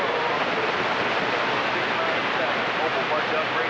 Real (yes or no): yes